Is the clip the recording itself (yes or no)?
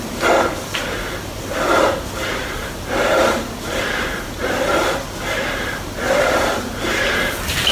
yes